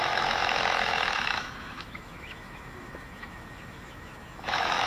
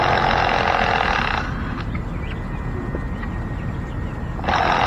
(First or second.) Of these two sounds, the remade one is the first